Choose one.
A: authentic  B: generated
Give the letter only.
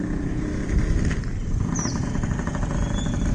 A